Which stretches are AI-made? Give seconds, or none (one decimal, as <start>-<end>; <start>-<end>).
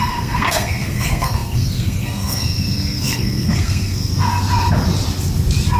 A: 0.0-4.1